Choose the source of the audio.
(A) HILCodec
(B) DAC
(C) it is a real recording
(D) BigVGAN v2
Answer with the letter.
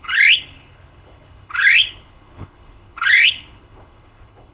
A